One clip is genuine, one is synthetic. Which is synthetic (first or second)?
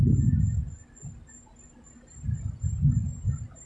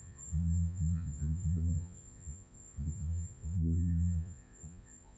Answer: second